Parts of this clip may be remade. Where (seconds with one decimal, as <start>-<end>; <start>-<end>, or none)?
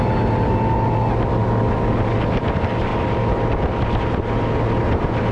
none